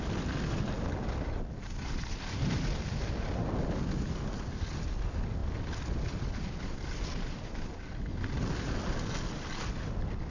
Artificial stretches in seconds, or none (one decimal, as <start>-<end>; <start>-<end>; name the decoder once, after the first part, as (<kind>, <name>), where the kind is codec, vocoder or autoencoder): none